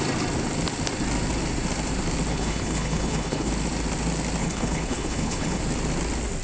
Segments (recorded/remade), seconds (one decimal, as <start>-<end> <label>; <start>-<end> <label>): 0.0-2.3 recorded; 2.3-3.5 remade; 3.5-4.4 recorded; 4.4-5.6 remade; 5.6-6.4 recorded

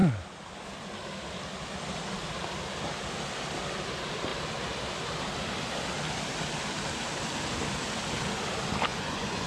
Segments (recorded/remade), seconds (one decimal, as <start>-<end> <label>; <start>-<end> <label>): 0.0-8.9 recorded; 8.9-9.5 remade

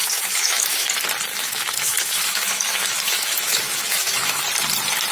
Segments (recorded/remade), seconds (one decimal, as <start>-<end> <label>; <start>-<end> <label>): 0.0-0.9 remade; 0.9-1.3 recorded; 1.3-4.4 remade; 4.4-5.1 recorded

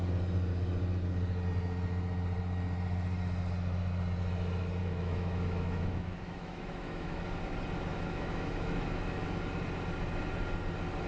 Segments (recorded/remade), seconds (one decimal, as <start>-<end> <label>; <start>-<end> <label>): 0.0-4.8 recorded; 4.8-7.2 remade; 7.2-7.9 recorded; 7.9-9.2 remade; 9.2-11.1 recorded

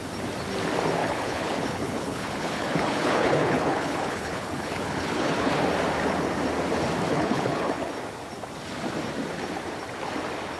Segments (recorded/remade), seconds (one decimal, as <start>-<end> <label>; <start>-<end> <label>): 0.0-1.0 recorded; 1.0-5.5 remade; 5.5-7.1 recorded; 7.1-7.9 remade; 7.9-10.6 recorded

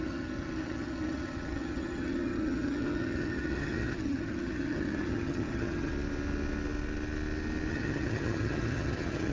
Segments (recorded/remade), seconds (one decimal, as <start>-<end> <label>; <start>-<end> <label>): 0.0-5.9 remade; 5.9-7.7 recorded; 7.7-9.3 remade

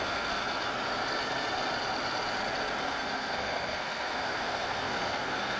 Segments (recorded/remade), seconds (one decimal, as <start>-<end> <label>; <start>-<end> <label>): 0.0-0.4 remade; 0.4-2.8 recorded; 2.8-5.6 remade

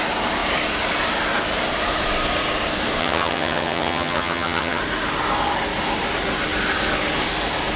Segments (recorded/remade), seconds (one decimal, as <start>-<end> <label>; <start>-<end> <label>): 0.0-3.0 recorded; 3.0-4.8 remade; 4.8-7.8 recorded